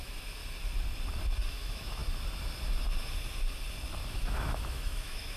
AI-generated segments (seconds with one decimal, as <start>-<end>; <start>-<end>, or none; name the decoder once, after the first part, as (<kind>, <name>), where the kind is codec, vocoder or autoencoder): 0.0-0.4 (autoencoder, DAC-VAE); 1.5-2.0; 4.1-5.4